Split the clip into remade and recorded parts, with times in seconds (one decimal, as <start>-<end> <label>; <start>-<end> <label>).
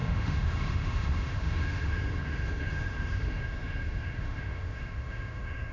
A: 0.0-5.7 remade